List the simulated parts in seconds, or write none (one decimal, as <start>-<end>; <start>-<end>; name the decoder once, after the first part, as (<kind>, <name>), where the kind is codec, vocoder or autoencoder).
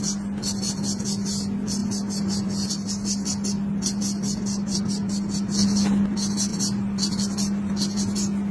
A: none